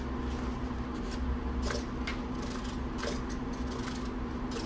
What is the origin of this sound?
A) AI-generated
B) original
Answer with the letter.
B